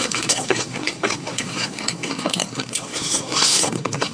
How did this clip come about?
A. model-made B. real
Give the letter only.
A